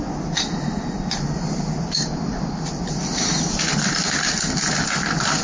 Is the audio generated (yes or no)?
no